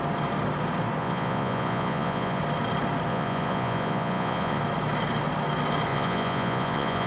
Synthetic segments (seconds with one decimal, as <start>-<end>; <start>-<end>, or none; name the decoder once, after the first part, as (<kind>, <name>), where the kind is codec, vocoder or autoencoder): 1.0-2.4 (vocoder, Vocos); 3.1-4.6; 5.9-7.1